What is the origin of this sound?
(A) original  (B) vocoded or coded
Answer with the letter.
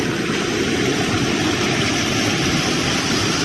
B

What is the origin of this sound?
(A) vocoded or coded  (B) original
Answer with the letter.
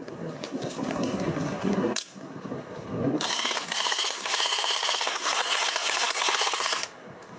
A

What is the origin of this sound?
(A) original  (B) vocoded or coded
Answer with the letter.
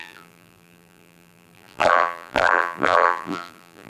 B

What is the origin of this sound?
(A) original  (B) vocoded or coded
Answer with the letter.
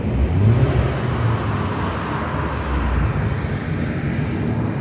A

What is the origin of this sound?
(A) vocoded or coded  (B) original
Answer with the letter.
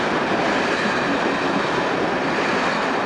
B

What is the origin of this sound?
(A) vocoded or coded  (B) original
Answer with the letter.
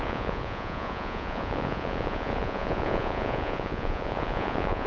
A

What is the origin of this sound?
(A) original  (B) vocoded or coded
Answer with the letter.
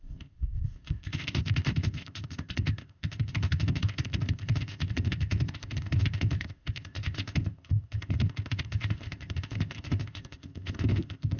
B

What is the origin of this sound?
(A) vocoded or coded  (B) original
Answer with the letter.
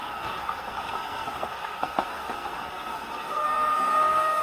A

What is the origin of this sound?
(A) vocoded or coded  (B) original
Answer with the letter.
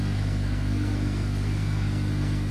A